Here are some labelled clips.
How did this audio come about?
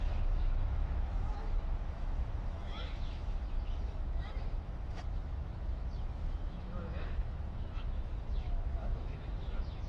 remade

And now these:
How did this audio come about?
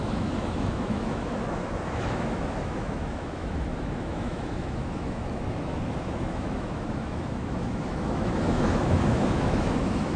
remade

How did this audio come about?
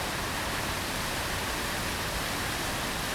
recorded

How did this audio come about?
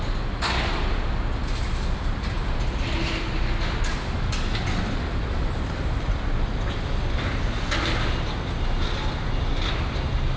recorded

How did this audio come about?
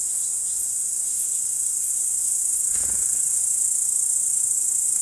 remade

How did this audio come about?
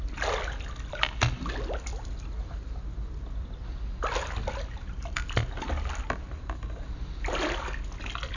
recorded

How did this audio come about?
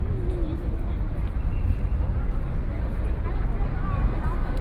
recorded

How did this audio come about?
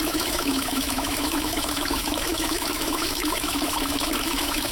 remade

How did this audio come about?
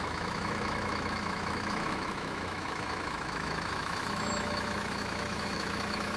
remade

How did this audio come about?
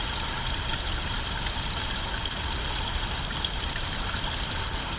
recorded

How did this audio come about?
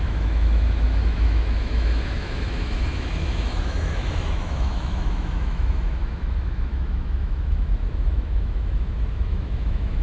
remade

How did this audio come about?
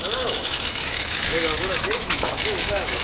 remade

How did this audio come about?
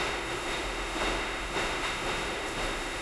remade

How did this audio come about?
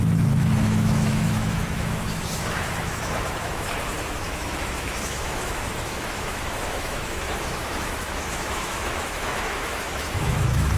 remade